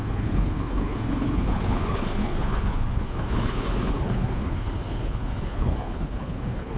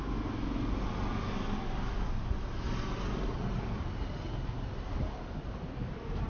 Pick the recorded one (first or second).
second